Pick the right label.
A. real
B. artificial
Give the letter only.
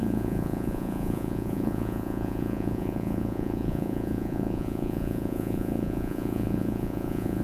B